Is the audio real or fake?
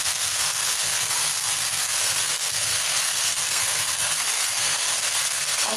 fake